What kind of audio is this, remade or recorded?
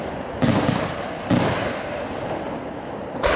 recorded